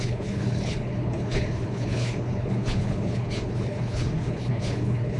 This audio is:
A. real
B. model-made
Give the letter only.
B